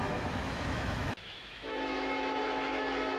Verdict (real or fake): fake